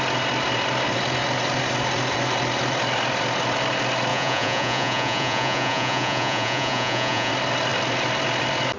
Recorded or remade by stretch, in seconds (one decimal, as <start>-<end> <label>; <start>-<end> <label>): 0.0-4.1 recorded; 4.1-7.3 remade; 7.3-8.8 recorded